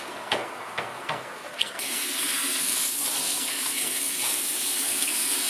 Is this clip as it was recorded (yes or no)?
no